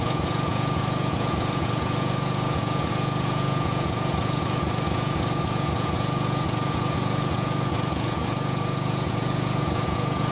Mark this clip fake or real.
fake